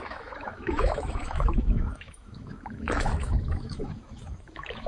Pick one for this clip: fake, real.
fake